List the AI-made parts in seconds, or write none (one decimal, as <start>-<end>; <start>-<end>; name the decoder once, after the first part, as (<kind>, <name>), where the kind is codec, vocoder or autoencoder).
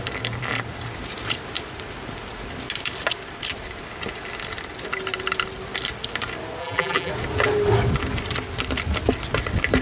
6.6-7.1 (vocoder, BigVGAN v2)